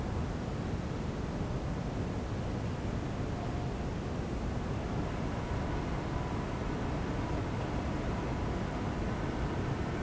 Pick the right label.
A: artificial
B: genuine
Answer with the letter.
B